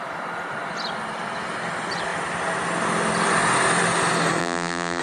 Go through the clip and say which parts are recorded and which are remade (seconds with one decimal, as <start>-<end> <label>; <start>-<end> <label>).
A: 0.0-4.4 recorded; 4.4-5.0 remade